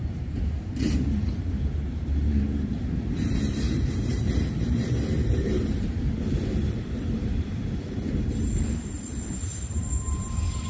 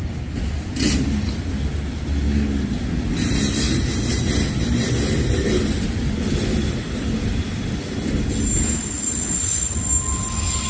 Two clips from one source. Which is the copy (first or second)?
first